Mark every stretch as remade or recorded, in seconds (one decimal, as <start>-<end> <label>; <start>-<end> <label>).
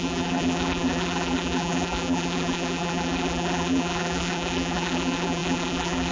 0.0-6.1 remade